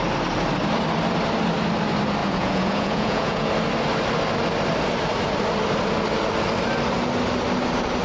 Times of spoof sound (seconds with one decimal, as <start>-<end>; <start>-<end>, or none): 2.2-3.5